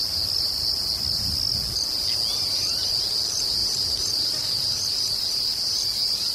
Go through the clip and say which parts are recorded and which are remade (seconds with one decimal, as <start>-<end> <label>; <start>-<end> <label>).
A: 0.0-2.3 recorded; 2.3-2.9 remade; 2.9-3.6 recorded; 3.6-6.3 remade